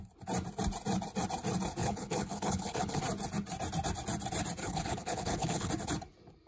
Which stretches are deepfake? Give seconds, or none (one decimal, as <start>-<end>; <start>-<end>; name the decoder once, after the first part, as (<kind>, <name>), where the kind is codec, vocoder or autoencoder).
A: 1.8-3.0 (codec, HILCodec); 4.6-5.7